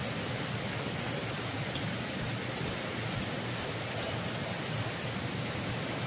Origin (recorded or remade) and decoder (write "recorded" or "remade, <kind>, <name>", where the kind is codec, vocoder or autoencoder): recorded